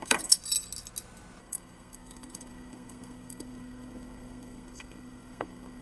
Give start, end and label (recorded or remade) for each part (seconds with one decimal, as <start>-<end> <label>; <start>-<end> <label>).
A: 0.0-0.4 remade; 0.4-1.4 recorded; 1.4-5.8 remade